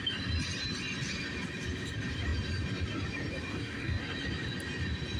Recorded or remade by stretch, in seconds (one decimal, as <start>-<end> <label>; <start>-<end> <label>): 0.0-3.5 recorded; 3.5-4.0 remade; 4.0-5.2 recorded